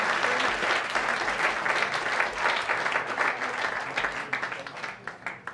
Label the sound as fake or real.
real